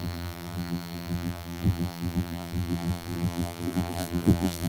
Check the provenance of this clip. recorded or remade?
remade